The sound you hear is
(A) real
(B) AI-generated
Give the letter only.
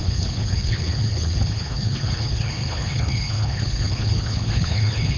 B